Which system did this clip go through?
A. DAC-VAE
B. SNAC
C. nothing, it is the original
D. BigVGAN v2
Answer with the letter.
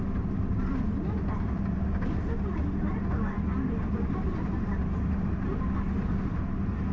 C